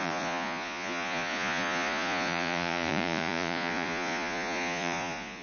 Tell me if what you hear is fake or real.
fake